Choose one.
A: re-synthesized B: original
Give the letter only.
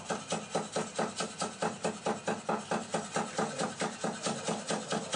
B